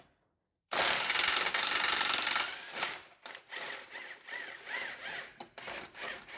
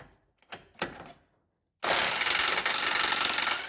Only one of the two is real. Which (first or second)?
second